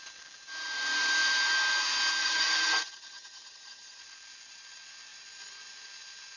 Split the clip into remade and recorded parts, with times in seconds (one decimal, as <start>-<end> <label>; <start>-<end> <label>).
0.0-2.2 recorded; 2.2-4.0 remade; 4.0-6.4 recorded